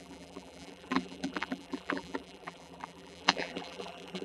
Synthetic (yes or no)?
yes